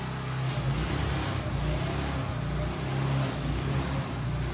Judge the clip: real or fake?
real